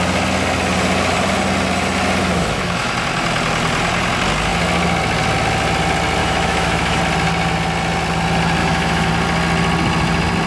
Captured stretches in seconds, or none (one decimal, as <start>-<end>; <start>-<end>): 0.0-2.2; 2.9-6.2; 7.0-8.6; 9.1-10.5